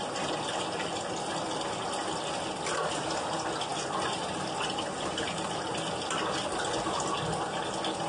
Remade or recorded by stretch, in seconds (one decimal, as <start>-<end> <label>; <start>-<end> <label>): 0.0-8.1 recorded